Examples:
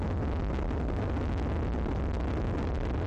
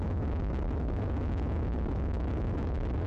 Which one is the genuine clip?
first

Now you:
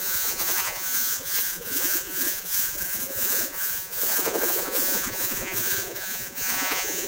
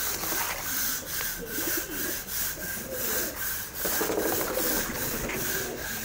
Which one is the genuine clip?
second